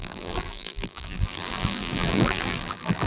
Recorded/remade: remade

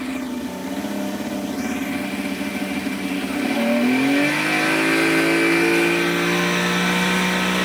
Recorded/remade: recorded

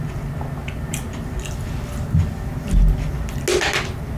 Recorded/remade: recorded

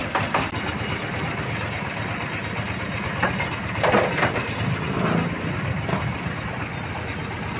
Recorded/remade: recorded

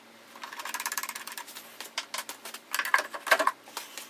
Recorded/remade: recorded